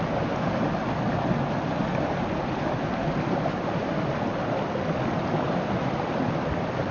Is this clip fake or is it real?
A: real